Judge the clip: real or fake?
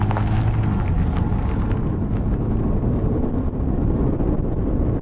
real